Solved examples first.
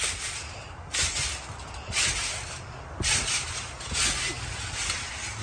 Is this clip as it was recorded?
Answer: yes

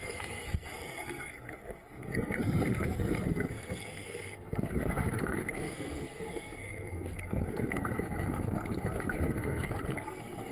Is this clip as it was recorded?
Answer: no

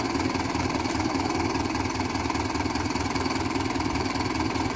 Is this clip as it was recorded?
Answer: no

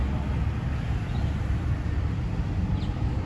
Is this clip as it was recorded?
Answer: yes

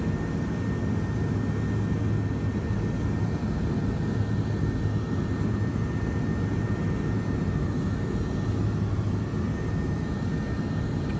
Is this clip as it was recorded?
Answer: yes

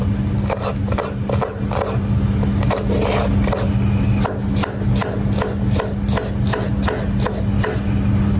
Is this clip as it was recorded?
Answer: yes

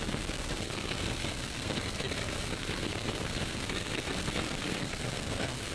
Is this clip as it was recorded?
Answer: no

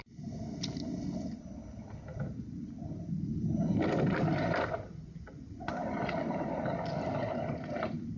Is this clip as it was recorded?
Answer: yes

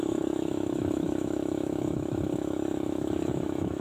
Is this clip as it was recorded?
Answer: no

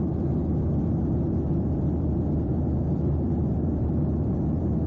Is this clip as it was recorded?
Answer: no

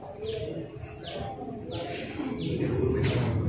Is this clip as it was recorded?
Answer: yes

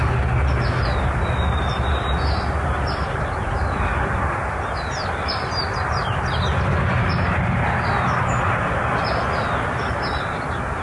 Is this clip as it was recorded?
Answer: yes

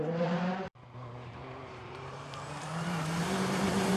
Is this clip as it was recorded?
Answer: no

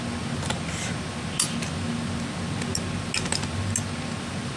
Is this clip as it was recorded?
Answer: yes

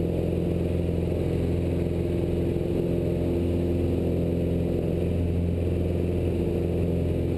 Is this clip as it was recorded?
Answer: yes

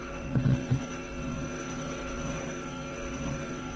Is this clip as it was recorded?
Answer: no